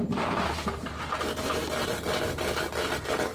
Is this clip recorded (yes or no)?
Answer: no